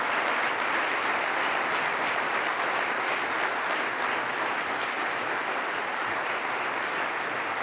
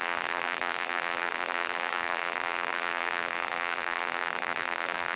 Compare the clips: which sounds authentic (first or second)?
first